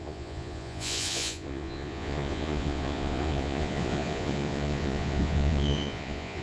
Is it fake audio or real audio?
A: fake